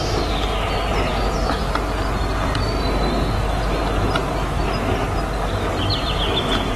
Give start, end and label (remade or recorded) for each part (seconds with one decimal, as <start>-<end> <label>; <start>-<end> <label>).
0.0-6.8 recorded